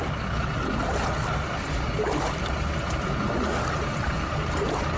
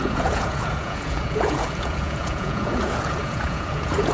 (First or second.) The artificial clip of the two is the second